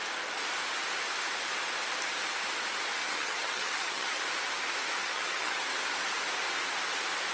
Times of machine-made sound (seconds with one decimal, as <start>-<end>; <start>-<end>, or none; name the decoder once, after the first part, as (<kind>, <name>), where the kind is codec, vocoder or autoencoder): 3.0-4.2 (vocoder, HiFi-GAN); 5.0-5.6